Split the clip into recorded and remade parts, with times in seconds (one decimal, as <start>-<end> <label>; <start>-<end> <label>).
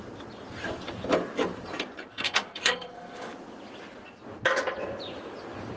0.0-2.1 recorded; 2.1-3.3 remade; 3.3-5.8 recorded